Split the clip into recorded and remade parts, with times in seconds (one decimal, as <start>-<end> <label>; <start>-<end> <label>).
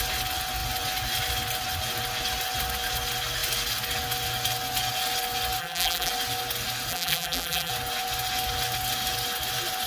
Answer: 0.0-5.6 recorded; 5.6-6.1 remade; 6.1-6.9 recorded; 6.9-7.7 remade; 7.7-9.9 recorded